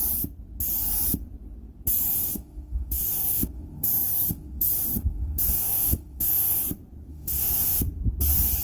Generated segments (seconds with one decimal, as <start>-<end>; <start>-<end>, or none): 2.1-6.6; 7.1-7.8